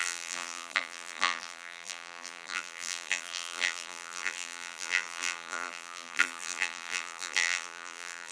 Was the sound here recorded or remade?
remade